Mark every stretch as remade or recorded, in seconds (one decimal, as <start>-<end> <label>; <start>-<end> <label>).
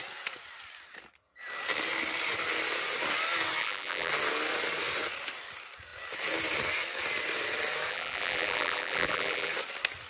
0.0-3.6 recorded; 3.6-4.1 remade; 4.1-7.9 recorded; 7.9-9.5 remade; 9.5-10.1 recorded